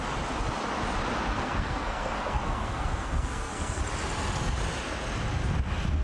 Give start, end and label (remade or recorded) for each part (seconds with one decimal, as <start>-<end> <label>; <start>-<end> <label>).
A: 0.0-1.3 recorded; 1.3-3.8 remade; 3.8-6.0 recorded

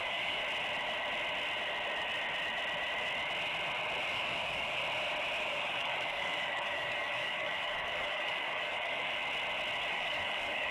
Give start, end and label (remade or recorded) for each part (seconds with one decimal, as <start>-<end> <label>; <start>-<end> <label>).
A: 0.0-0.4 remade; 0.4-4.1 recorded; 4.1-4.8 remade; 4.8-5.4 recorded; 5.4-9.2 remade; 9.2-9.9 recorded; 9.9-10.7 remade

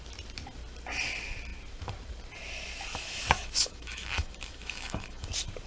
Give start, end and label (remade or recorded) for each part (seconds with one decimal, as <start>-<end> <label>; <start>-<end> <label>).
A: 0.0-2.9 recorded; 2.9-5.3 remade; 5.3-5.7 recorded